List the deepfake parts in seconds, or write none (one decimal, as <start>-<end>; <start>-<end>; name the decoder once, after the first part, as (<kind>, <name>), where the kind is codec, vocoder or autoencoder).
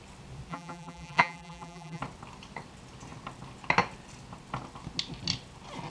0.5-2.0 (vocoder, BigVGAN v2)